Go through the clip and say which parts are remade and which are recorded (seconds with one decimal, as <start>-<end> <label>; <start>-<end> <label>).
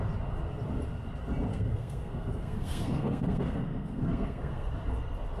0.0-1.5 recorded; 1.5-4.7 remade; 4.7-5.4 recorded